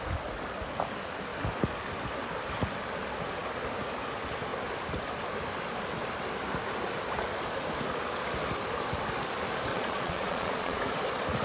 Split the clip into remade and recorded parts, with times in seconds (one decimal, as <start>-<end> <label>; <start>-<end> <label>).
0.0-9.7 recorded; 9.7-10.8 remade; 10.8-11.4 recorded